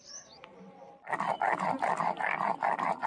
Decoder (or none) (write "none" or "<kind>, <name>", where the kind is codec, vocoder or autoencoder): none